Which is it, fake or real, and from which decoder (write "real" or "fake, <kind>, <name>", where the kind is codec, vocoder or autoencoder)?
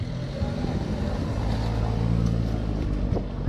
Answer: real